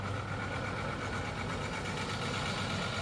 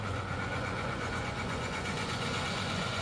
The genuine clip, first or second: first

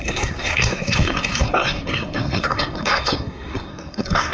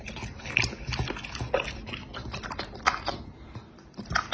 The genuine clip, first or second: second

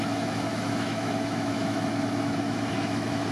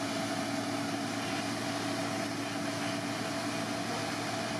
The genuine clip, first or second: second